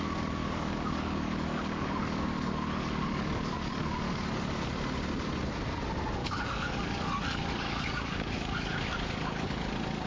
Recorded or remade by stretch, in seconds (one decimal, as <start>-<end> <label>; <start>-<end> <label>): 0.0-0.4 recorded; 0.4-4.7 remade; 4.7-6.2 recorded; 6.2-9.7 remade; 9.7-10.1 recorded